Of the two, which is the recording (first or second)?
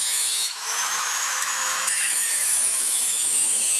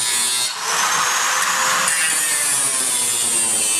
second